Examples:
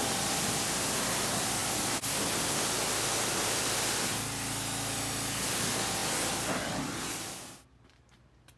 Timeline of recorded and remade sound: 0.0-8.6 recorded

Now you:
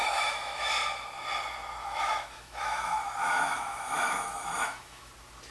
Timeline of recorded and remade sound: 0.0-0.7 remade; 0.7-1.8 recorded; 1.8-5.1 remade; 5.1-5.5 recorded